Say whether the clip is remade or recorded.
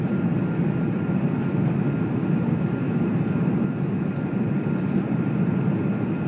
recorded